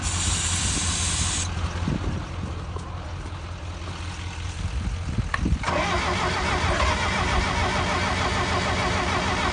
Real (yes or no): yes